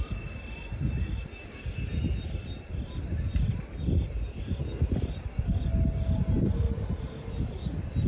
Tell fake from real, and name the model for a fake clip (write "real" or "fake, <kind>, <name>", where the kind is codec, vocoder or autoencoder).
real